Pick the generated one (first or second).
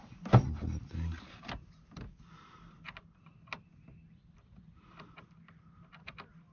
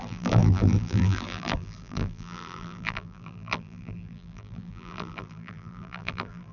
second